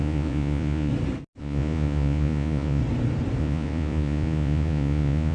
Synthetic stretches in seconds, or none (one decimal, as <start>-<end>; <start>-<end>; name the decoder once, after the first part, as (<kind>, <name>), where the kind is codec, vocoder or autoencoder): 0.0-0.9 (vocoder, Vocos); 1.4-2.8; 3.4-5.3